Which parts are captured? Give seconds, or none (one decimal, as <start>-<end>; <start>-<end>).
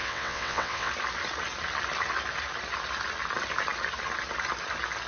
0.9-5.1